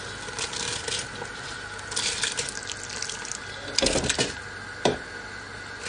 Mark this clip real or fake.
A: real